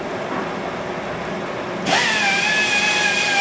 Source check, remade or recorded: recorded